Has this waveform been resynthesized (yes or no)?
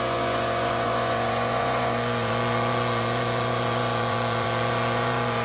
yes